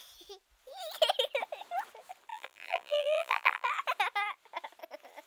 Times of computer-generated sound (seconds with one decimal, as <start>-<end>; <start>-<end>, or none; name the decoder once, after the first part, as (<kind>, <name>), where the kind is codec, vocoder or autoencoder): 2.3-3.7 (vocoder, BigVGAN v2)